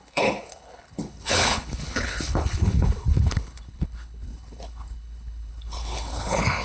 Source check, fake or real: fake